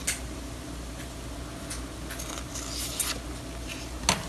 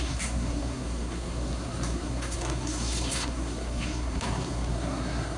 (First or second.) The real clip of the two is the first